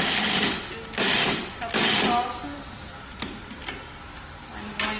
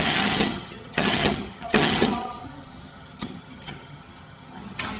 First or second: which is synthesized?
second